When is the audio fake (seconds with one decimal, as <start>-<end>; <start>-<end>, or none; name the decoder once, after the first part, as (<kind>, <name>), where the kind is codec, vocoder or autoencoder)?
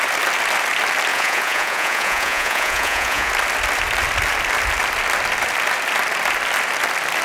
1.1-3.3 (vocoder, Vocos)